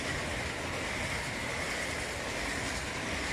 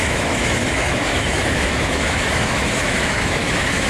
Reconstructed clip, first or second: second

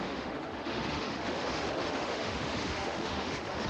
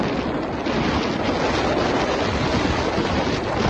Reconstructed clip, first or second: first